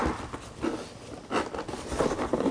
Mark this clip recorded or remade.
recorded